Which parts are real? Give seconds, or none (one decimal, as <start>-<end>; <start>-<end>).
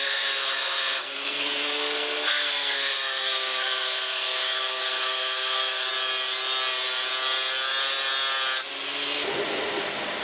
5.9-10.2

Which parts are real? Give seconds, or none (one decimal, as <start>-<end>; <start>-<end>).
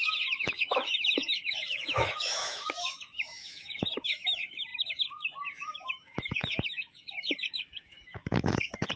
none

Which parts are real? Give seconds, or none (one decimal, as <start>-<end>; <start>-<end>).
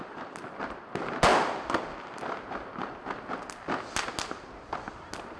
0.0-5.4